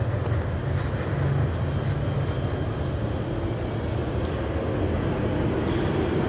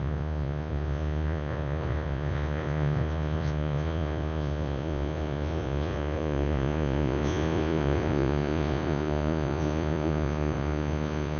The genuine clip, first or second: first